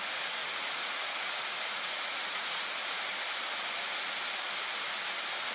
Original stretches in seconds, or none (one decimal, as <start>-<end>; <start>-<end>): 0.0-0.4; 2.7-5.5

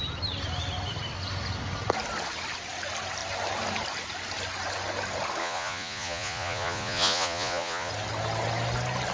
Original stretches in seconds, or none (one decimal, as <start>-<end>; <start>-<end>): 0.0-5.4; 7.9-9.1

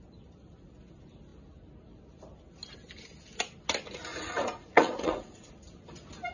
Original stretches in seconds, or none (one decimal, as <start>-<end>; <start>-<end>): 0.0-4.1; 5.5-6.3

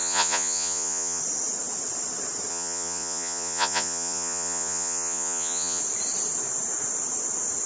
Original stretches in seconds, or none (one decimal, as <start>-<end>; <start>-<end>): 1.2-2.5; 5.8-7.7